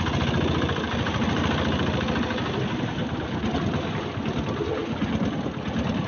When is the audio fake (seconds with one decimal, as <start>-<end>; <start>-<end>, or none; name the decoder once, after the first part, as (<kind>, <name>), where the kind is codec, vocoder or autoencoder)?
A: none